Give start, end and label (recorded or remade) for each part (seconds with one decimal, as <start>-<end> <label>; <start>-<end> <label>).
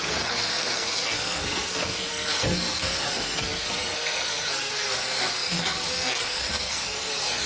0.0-7.5 remade